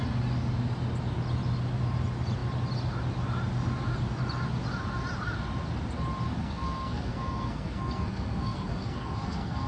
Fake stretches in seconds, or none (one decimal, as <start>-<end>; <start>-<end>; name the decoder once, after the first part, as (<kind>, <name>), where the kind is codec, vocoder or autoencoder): 6.4-9.7 (codec, SNAC)